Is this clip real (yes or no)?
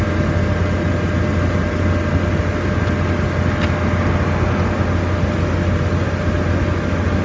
yes